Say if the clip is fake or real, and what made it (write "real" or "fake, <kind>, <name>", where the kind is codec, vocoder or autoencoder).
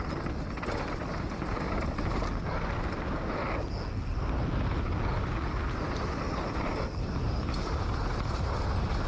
real